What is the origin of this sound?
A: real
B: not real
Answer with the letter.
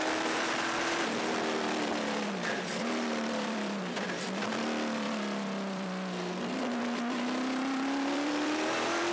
B